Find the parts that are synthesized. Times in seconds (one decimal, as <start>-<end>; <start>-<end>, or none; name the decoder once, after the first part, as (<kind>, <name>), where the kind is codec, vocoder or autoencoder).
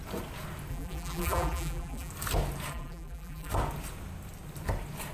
0.7-2.1 (vocoder, BigVGAN v2); 2.7-3.5